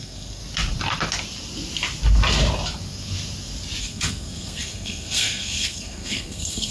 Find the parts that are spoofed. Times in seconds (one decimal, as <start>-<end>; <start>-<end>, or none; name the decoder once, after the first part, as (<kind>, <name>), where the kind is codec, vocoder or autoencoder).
0.0-0.4 (codec, SNAC); 3.8-6.7